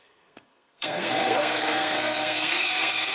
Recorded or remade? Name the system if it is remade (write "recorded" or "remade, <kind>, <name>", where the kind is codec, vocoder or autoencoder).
remade, codec, SNAC